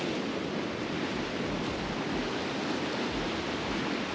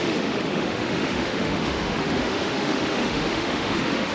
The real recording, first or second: first